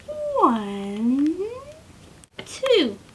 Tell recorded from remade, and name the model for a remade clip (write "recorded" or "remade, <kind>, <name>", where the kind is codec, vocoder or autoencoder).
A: recorded